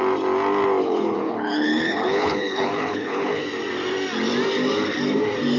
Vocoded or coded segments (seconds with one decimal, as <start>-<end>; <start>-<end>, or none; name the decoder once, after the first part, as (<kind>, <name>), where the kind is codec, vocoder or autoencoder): 0.8-3.4 (codec, HILCodec)